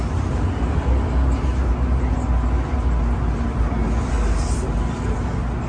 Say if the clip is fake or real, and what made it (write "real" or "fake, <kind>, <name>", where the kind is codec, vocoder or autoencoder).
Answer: real